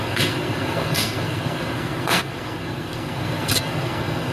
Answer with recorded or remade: remade